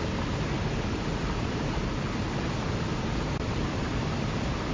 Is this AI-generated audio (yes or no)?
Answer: no